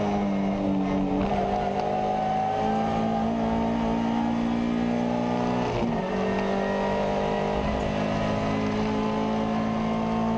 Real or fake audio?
real